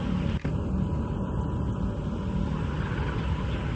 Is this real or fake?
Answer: real